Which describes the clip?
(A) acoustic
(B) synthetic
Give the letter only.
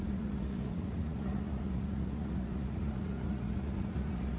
B